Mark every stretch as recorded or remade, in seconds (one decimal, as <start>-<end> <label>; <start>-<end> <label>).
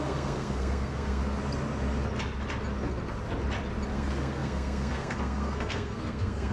0.0-1.2 remade; 1.2-3.9 recorded; 3.9-6.5 remade